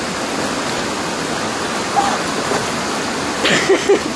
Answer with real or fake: real